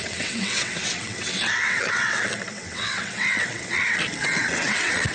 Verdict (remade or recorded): remade